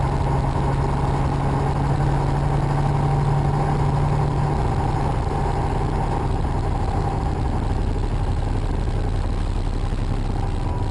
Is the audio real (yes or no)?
yes